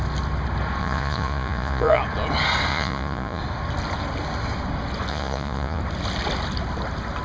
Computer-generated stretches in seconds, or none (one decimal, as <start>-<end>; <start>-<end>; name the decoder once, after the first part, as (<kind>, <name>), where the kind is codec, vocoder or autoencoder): 0.8-2.0 (vocoder, Vocos); 2.7-3.4; 5.1-5.8

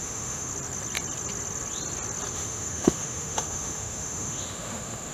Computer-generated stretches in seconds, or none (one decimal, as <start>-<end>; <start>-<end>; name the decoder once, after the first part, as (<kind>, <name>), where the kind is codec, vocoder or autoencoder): 0.0-0.5 (autoencoder, DAC-VAE); 2.3-5.1

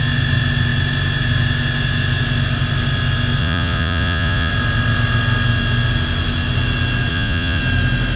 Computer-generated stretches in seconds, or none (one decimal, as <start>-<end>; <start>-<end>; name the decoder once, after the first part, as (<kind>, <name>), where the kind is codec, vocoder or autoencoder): 3.4-4.5 (vocoder, Vocos); 7.1-7.6

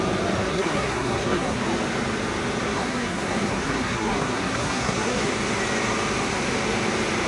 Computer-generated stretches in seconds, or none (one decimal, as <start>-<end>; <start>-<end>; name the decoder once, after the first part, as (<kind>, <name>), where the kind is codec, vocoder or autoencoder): 0.5-1.6 (codec, SNAC); 2.6-5.3

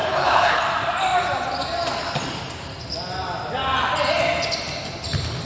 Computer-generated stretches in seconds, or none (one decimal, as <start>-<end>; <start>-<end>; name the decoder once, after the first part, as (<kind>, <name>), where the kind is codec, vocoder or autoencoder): 0.0-0.6 (codec, HILCodec)

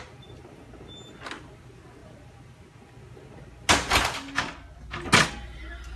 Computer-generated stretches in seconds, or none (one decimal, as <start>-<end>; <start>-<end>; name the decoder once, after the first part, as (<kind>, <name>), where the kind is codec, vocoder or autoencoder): none

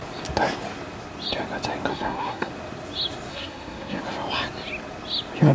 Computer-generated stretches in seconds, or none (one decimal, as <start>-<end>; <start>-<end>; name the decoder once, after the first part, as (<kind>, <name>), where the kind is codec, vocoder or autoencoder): 1.9-2.5 (codec, SNAC); 3.3-4.0